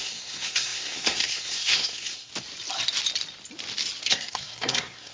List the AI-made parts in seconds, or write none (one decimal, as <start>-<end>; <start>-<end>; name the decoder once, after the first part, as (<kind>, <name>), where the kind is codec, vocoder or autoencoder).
0.0-2.3 (codec, SNAC); 4.0-5.1